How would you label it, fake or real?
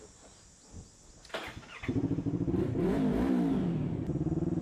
real